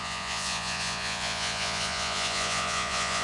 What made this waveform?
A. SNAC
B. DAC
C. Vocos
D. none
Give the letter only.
C